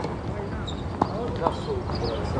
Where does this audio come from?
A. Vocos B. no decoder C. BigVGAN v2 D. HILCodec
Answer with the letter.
B